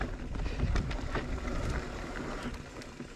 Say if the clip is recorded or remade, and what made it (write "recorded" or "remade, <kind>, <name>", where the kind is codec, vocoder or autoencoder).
recorded